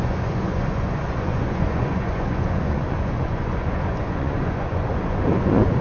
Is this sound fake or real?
fake